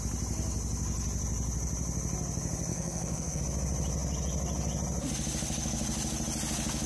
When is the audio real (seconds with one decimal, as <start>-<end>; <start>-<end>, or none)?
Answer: 0.0-2.7; 3.4-6.9